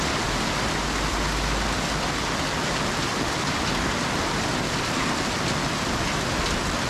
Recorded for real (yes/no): yes